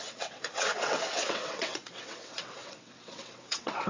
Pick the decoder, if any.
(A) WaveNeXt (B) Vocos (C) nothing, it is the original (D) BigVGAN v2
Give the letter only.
A